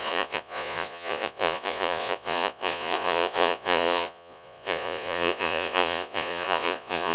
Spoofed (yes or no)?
yes